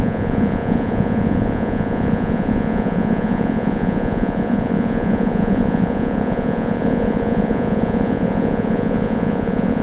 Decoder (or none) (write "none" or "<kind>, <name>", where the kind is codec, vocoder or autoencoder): vocoder, Vocos